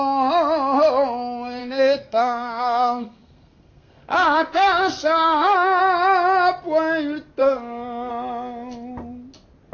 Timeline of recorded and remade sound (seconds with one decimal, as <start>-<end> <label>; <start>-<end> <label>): 0.0-1.6 recorded; 1.6-5.8 remade; 5.8-7.4 recorded; 7.4-8.1 remade; 8.1-9.7 recorded